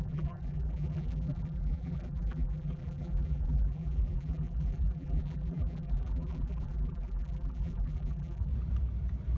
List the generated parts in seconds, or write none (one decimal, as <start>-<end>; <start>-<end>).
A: 0.0-8.5